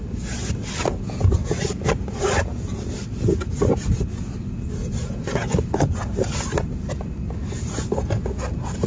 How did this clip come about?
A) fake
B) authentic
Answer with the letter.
B